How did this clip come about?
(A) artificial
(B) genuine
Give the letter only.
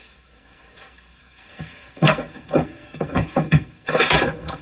A